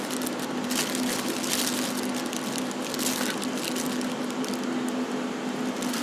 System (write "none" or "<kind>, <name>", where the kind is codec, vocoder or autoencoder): none